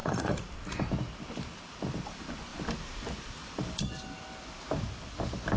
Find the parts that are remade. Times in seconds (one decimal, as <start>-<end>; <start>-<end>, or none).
0.0-0.5